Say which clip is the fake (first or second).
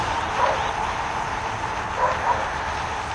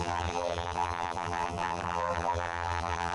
second